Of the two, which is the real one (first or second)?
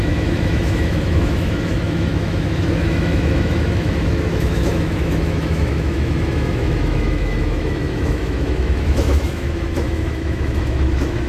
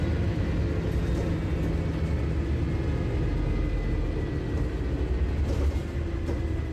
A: second